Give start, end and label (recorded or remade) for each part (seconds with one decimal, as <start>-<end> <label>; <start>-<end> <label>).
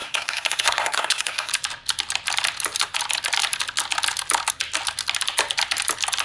0.0-1.5 remade; 1.5-6.2 recorded